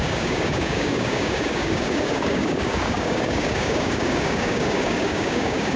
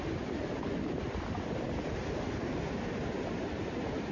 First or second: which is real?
second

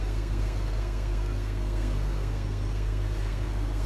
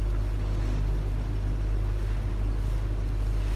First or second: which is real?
second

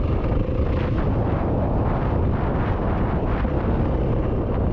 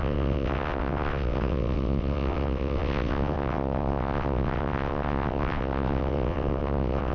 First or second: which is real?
first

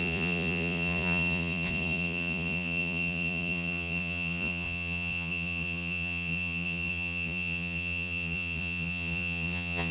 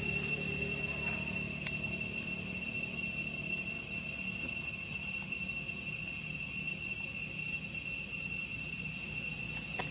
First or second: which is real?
second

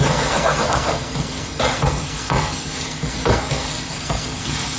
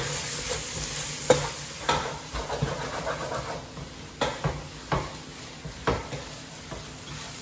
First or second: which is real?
second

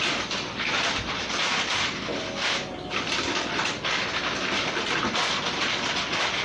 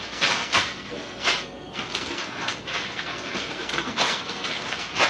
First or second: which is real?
first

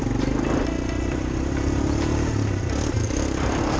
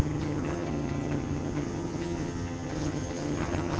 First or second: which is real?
first